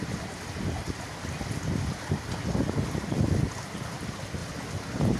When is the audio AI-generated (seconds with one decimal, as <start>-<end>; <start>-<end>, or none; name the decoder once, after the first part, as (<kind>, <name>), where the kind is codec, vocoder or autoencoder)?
4.4-5.2 (vocoder, BigVGAN v2)